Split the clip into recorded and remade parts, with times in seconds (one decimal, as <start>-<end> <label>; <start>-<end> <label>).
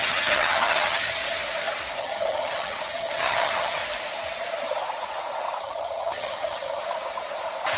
0.0-1.2 remade; 1.2-2.0 recorded; 2.0-3.8 remade; 3.8-5.6 recorded; 5.6-6.8 remade; 6.8-7.8 recorded